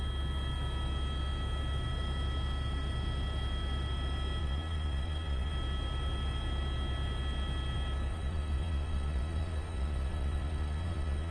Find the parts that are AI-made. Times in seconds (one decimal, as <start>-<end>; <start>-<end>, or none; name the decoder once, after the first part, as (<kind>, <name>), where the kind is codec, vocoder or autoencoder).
4.4-5.5 (vocoder, Vocos); 8.1-11.3